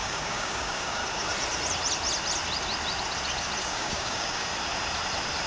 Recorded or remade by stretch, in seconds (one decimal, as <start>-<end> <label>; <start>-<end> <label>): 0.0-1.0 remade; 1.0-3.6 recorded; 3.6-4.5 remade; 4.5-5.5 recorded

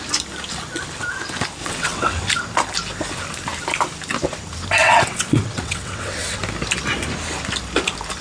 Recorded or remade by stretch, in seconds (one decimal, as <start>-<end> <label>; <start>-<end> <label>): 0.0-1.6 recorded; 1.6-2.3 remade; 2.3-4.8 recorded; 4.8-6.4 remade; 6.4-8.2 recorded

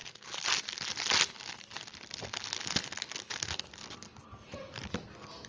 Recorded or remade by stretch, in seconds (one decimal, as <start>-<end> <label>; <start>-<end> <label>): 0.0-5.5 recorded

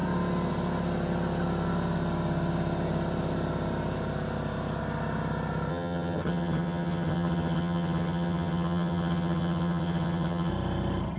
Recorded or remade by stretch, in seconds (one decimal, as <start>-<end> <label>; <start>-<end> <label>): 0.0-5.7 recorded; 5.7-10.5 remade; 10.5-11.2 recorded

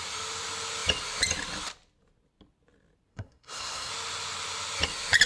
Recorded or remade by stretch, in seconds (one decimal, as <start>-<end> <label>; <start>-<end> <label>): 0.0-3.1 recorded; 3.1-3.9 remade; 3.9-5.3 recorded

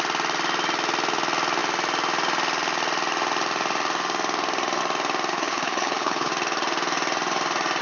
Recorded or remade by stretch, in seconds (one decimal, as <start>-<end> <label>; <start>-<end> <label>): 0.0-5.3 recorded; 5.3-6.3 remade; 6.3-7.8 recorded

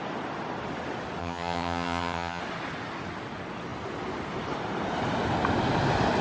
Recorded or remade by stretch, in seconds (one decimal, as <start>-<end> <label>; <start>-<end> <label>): 0.0-1.2 recorded; 1.2-2.4 remade; 2.4-6.2 recorded

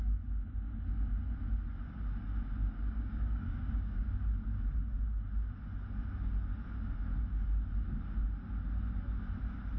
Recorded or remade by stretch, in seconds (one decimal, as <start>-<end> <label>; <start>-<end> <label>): 0.0-2.6 recorded; 2.6-4.1 remade; 4.1-9.8 recorded